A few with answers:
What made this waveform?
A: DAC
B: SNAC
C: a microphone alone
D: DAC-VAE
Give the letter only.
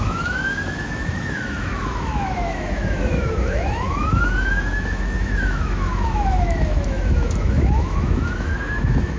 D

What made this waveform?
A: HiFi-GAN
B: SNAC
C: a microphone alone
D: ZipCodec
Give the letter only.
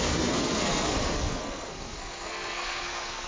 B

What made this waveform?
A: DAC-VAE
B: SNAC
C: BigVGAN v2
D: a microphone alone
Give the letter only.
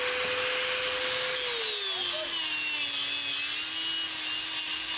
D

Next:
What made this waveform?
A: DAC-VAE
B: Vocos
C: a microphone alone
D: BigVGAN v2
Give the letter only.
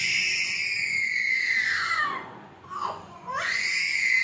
B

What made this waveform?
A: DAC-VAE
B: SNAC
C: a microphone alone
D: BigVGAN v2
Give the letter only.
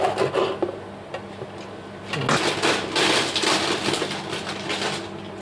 C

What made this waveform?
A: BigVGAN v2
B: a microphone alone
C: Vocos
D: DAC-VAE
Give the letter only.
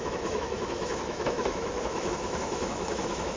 D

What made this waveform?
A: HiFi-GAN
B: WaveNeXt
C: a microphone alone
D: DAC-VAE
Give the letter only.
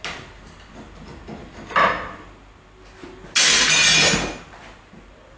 C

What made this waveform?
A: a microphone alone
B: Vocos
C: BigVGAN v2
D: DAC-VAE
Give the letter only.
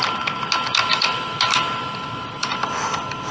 A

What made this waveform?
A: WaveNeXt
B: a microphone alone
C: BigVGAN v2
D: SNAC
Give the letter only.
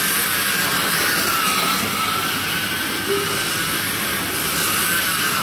B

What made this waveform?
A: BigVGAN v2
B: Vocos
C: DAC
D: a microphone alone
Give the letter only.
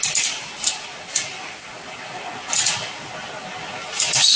D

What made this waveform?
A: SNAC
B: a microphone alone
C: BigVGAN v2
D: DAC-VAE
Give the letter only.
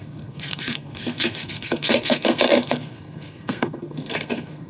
A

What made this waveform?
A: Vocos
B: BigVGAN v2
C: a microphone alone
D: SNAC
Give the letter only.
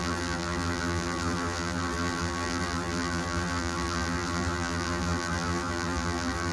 B